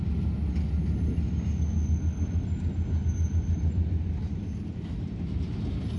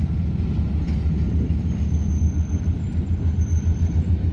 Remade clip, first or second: second